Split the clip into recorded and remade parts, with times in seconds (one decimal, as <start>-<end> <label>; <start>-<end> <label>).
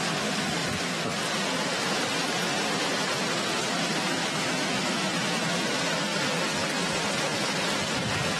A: 0.0-4.2 recorded; 4.2-5.2 remade; 5.2-8.4 recorded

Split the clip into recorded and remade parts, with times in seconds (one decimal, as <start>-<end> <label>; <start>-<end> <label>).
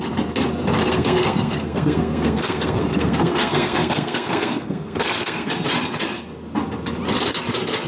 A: 0.0-0.8 recorded; 0.8-5.5 remade; 5.5-7.9 recorded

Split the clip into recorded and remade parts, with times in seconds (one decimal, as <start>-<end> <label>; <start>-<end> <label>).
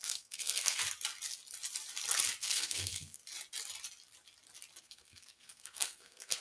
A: 0.0-0.8 remade; 0.8-2.4 recorded; 2.4-3.2 remade; 3.2-4.8 recorded; 4.8-6.4 remade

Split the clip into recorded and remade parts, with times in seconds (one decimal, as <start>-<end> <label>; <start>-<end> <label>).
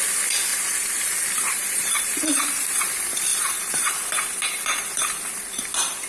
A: 0.0-0.5 recorded; 0.5-2.8 remade; 2.8-3.3 recorded; 3.3-5.6 remade; 5.6-6.1 recorded